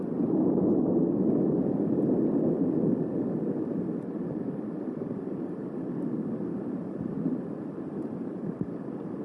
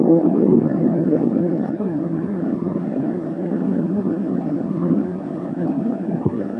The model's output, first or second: second